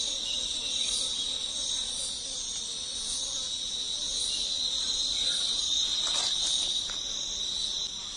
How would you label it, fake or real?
real